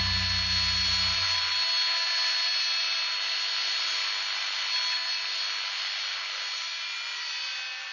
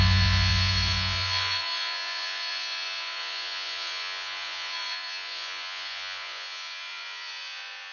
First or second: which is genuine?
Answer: first